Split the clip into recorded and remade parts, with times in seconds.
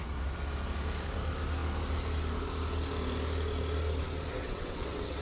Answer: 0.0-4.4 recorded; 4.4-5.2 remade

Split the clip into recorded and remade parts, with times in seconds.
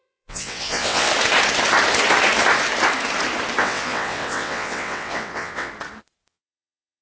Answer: 0.0-1.1 remade; 1.1-3.6 recorded; 3.6-5.7 remade; 5.7-6.3 recorded; 6.3-7.0 remade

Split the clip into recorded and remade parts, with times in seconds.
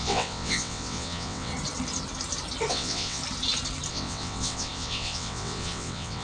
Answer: 0.0-1.5 remade; 1.5-2.7 recorded; 2.7-3.2 remade; 3.2-3.9 recorded; 3.9-6.2 remade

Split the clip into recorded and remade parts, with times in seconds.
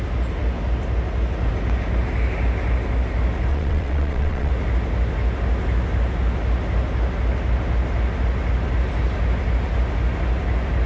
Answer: 0.0-3.5 recorded; 3.5-4.5 remade; 4.5-10.9 recorded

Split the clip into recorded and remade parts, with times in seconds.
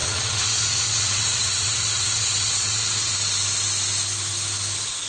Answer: 0.0-3.1 remade; 3.1-5.1 recorded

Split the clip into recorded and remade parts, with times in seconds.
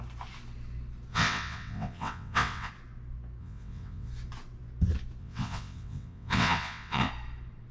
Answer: 0.0-1.1 recorded; 1.1-2.7 remade; 2.7-3.4 recorded; 3.4-4.1 remade; 4.1-5.2 recorded; 5.2-7.1 remade; 7.1-7.7 recorded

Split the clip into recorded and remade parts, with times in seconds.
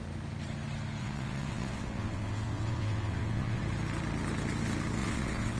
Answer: 0.0-1.0 recorded; 1.0-3.6 remade; 3.6-5.0 recorded; 5.0-5.6 remade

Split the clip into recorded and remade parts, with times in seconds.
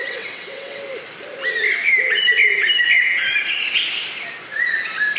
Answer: 0.0-0.8 remade; 0.8-5.2 recorded